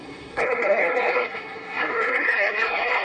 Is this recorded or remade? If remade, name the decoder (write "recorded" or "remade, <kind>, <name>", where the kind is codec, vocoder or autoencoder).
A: remade, codec, SNAC